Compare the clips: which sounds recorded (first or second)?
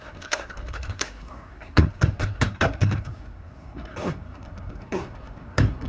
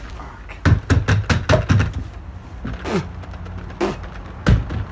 second